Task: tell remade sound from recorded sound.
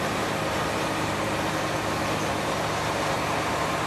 recorded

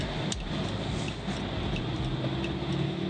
recorded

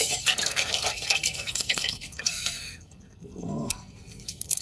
remade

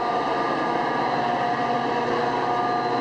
recorded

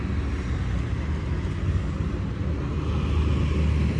recorded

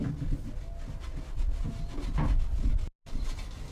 recorded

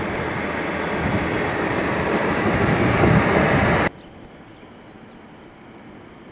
recorded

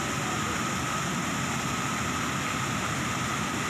recorded